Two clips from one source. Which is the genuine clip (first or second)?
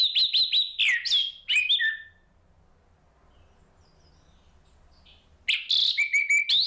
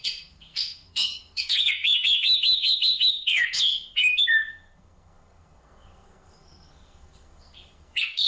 first